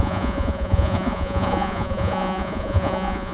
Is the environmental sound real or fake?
fake